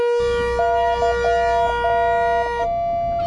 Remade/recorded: recorded